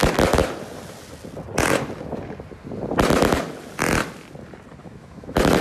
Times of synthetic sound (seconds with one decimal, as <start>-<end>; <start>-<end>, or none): 4.8-5.6